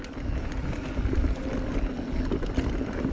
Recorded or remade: recorded